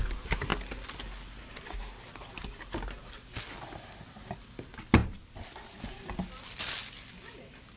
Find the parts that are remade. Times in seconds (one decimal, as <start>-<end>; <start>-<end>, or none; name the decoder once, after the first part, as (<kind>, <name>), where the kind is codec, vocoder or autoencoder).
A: none